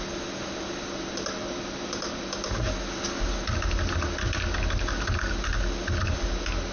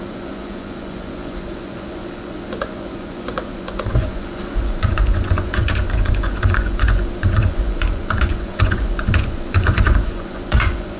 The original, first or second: first